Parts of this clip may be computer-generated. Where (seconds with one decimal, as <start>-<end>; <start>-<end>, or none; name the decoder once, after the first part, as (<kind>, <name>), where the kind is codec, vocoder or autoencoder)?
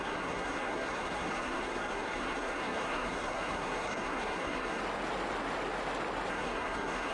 0.0-4.8 (codec, SNAC); 6.3-7.1